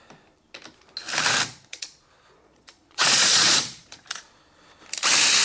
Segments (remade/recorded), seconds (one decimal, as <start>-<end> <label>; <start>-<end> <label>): 0.0-1.5 recorded; 1.5-4.5 remade; 4.5-5.4 recorded

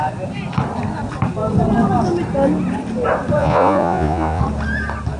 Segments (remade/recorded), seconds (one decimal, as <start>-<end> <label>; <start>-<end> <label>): 0.0-3.4 recorded; 3.4-4.4 remade; 4.4-5.2 recorded

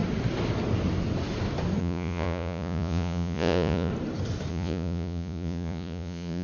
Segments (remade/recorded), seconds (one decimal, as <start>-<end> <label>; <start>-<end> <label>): 0.0-1.8 recorded; 1.8-3.9 remade; 3.9-4.5 recorded; 4.5-6.4 remade

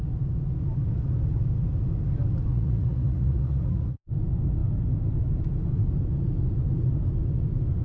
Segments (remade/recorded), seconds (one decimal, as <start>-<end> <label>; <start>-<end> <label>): 0.0-2.5 recorded; 2.5-4.0 remade; 4.0-7.8 recorded

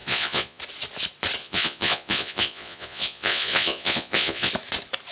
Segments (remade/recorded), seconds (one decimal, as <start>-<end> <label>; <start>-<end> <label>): 0.0-0.6 remade; 0.6-1.4 recorded; 1.4-4.5 remade; 4.5-5.1 recorded